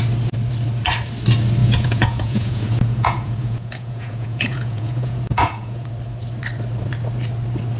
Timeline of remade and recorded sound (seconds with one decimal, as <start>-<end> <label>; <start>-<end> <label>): 0.0-1.6 recorded; 1.6-5.9 remade; 5.9-7.8 recorded